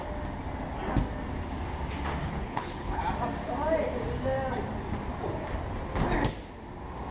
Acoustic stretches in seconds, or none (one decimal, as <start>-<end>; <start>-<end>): 0.0-2.2; 3.0-7.1